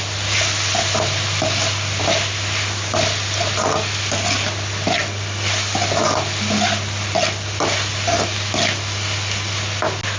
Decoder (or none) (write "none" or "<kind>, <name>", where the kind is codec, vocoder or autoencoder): none